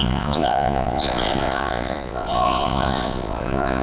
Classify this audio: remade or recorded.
remade